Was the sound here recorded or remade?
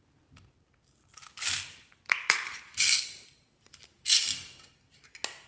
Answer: recorded